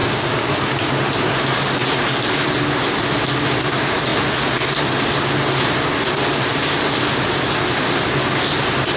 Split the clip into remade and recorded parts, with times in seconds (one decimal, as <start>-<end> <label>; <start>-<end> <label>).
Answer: 0.0-0.9 remade; 0.9-9.0 recorded